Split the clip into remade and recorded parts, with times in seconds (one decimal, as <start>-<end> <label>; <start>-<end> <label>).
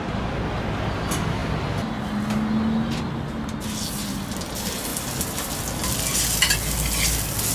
0.0-7.5 recorded